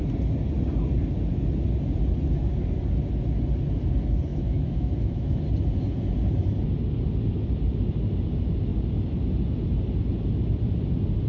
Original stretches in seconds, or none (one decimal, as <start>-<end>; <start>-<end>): 0.0-4.3; 5.4-11.3